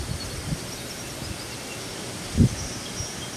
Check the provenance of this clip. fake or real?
real